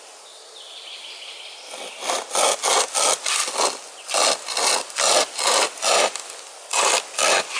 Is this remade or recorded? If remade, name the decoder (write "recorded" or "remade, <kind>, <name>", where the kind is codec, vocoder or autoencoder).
recorded